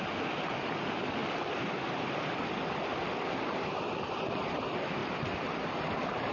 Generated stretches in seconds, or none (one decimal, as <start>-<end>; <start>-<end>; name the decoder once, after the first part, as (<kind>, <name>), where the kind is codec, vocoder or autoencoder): 1.2-2.2 (vocoder, BigVGAN v2); 5.0-6.3